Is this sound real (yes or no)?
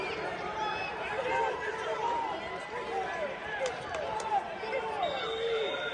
no